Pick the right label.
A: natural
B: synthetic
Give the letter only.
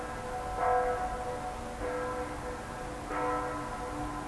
A